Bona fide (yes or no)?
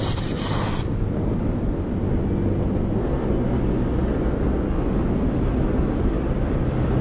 yes